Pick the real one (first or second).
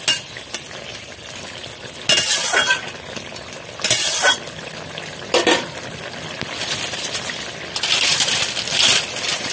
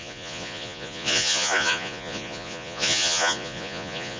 first